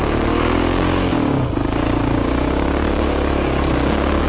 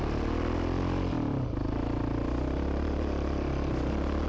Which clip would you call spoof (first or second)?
first